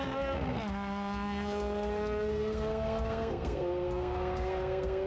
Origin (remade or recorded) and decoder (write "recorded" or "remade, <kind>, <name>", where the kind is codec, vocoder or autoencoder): remade, codec, SNAC